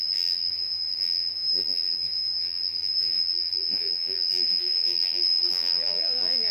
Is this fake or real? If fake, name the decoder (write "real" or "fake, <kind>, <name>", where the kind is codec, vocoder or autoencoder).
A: fake, vocoder, BigVGAN v2